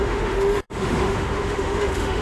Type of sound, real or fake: fake